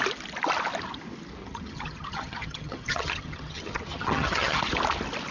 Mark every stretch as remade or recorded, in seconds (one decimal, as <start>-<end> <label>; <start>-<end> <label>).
0.0-1.4 recorded; 1.4-4.6 remade; 4.6-5.3 recorded